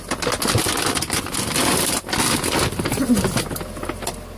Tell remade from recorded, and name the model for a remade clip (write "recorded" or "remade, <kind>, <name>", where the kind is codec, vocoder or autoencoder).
recorded